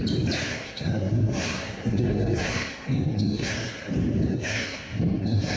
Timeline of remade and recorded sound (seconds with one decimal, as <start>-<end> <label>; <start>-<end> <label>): 0.0-0.5 recorded; 0.5-3.9 remade; 3.9-4.3 recorded; 4.3-5.6 remade